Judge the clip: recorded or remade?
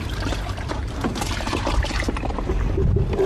remade